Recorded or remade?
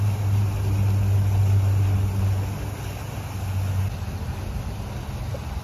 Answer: recorded